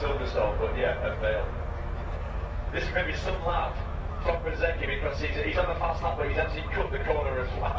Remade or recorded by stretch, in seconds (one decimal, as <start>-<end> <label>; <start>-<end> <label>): 0.0-7.8 remade